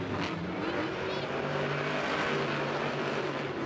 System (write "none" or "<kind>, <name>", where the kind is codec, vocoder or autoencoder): none